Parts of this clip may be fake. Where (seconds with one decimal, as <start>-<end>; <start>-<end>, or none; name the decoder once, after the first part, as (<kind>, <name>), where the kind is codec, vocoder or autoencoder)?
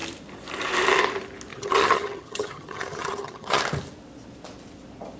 1.5-3.6 (vocoder, HiFi-GAN)